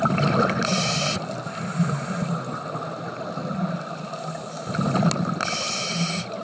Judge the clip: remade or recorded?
recorded